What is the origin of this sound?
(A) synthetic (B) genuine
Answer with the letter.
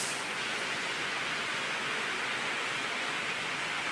A